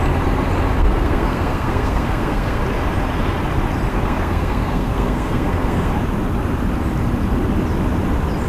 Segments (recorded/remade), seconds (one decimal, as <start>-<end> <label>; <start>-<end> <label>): 0.0-0.7 recorded; 0.7-2.6 remade; 2.6-3.9 recorded; 3.9-5.9 remade; 5.9-8.5 recorded